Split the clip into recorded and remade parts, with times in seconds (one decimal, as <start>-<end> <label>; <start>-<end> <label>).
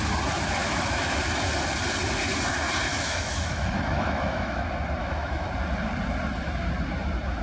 0.0-0.6 recorded; 0.6-1.2 remade; 1.2-2.9 recorded; 2.9-4.6 remade; 4.6-5.0 recorded; 5.0-5.5 remade; 5.5-7.4 recorded